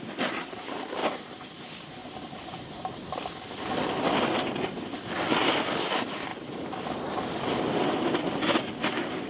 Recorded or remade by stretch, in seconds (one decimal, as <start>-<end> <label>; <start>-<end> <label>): 0.0-1.0 recorded; 1.0-1.6 remade; 1.6-2.0 recorded; 2.0-3.7 remade; 3.7-6.3 recorded; 6.3-6.9 remade; 6.9-9.3 recorded